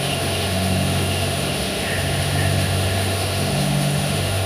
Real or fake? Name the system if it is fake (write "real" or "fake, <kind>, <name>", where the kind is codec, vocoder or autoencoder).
fake, autoencoder, DAC-VAE